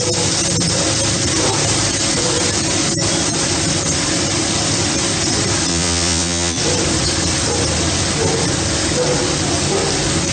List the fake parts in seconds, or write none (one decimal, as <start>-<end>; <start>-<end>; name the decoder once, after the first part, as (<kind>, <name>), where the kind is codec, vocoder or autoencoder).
5.7-6.6 (vocoder, Vocos)

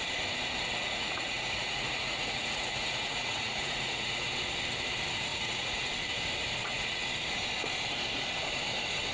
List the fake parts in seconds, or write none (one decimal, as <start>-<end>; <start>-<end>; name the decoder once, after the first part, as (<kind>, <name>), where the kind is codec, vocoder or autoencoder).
0.7-4.3 (vocoder, Vocos); 5.3-5.9; 6.6-7.1

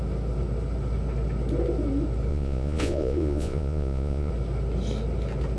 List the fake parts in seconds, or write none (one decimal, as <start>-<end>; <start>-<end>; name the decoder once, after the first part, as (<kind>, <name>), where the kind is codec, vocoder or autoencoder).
2.3-4.3 (vocoder, Vocos)

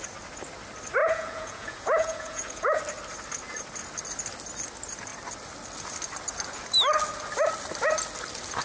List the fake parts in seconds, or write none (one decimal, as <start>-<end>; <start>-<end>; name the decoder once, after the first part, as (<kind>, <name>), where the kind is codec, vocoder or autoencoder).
1.0-2.8 (vocoder, Vocos)